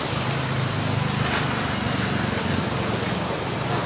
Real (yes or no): yes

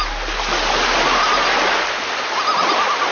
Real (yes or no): yes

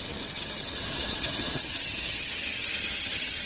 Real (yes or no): no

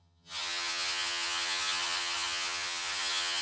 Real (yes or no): no